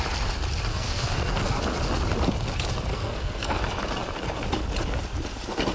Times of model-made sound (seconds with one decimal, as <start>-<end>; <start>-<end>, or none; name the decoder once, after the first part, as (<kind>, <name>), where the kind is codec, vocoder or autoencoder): 0.7-1.6 (codec, SNAC); 2.9-3.6